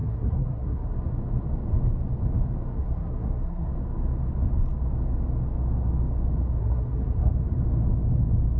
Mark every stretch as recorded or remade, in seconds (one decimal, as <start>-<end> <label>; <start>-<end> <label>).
0.0-0.9 remade; 0.9-2.8 recorded; 2.8-3.7 remade; 3.7-6.6 recorded; 6.6-7.3 remade; 7.3-8.6 recorded